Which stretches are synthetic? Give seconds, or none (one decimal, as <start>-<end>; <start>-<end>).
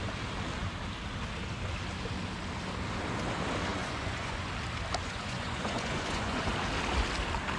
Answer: 3.7-4.5; 5.0-6.5